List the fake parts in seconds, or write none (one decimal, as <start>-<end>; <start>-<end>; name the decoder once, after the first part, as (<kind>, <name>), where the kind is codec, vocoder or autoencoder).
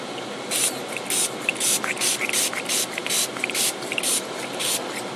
3.0-4.6 (vocoder, BigVGAN v2)